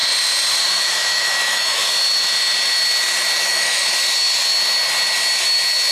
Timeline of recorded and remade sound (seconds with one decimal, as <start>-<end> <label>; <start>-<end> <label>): 0.0-0.6 recorded; 0.6-1.8 remade; 1.8-3.4 recorded; 3.4-3.8 remade; 3.8-5.9 recorded